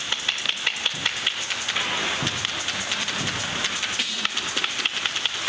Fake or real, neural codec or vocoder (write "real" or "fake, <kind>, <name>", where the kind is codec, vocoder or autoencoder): real